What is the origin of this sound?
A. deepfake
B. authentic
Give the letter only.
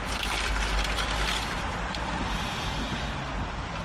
A